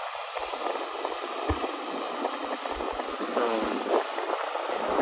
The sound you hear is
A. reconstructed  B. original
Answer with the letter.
A